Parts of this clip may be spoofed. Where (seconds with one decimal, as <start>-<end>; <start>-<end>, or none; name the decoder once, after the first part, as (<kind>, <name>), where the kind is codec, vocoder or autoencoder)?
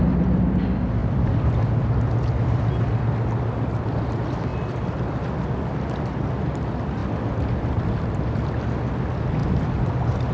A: none